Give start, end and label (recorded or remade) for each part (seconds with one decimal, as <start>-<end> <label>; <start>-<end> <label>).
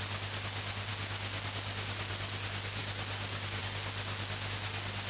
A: 0.0-5.1 recorded